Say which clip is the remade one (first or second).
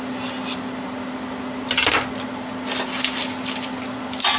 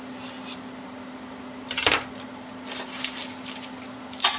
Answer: second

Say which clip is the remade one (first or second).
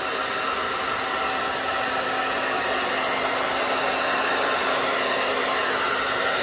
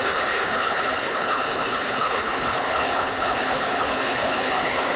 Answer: second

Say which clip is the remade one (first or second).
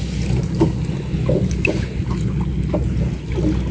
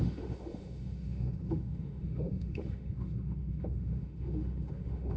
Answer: second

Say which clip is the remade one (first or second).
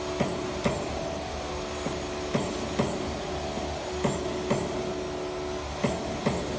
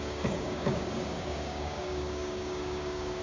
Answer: second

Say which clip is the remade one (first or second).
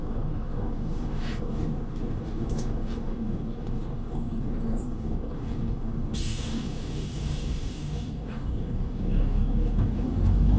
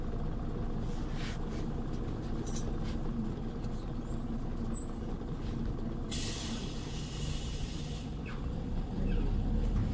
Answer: first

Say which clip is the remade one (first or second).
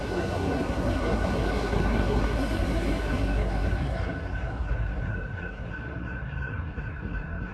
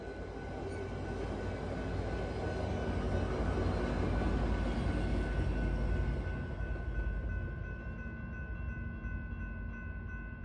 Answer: first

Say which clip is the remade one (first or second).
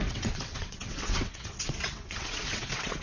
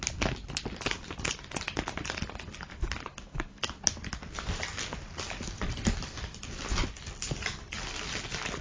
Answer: first